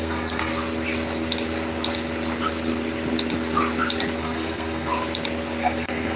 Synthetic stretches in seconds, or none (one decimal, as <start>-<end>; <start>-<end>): 0.0-0.5; 4.2-4.9; 5.6-6.2